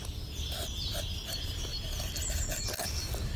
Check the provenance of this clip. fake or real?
real